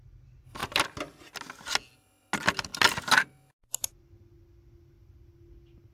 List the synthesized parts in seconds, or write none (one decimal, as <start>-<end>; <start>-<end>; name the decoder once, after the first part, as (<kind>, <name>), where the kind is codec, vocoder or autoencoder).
none